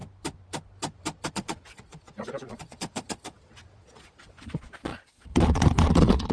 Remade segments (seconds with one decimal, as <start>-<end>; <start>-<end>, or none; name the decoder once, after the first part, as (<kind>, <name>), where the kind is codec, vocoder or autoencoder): 1.3-6.3 (vocoder, Vocos)